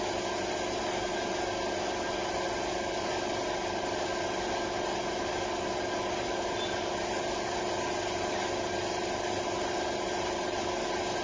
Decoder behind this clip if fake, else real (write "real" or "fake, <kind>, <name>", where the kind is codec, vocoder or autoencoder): real